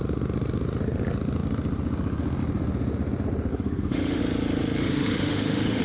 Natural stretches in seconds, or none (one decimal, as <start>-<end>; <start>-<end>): 0.0-3.5; 4.2-4.8